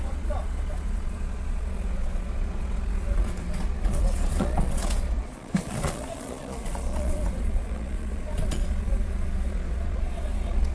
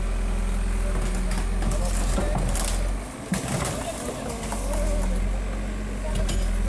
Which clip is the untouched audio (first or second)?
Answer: second